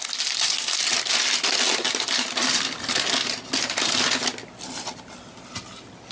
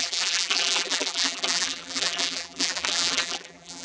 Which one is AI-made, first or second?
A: second